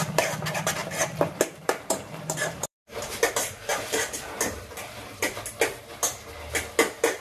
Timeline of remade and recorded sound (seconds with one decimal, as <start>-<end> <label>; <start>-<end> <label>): 0.0-0.8 recorded; 0.8-3.3 remade; 3.3-3.7 recorded; 3.7-5.2 remade; 5.2-7.2 recorded

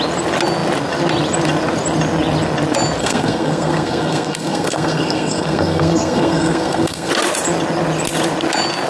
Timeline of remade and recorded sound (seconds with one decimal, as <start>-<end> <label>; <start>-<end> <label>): 0.0-3.0 recorded; 3.0-7.1 remade; 7.1-8.9 recorded

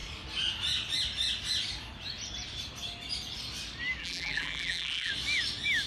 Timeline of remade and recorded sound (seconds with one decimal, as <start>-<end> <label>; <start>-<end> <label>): 0.0-4.0 recorded; 4.0-5.1 remade; 5.1-5.9 recorded

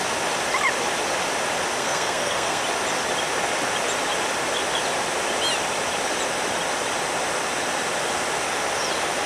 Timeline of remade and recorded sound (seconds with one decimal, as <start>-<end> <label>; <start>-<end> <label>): 0.0-1.8 recorded; 1.8-2.6 remade; 2.6-9.3 recorded

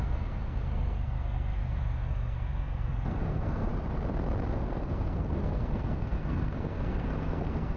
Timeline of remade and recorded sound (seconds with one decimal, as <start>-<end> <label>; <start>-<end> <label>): 0.0-3.7 remade; 3.7-4.5 recorded; 4.5-7.8 remade